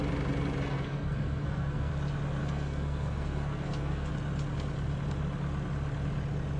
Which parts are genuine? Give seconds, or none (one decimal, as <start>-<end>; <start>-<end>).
0.0-0.7; 1.9-2.4; 4.1-6.6